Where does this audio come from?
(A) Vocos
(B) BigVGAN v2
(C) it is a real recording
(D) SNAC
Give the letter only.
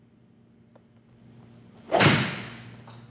C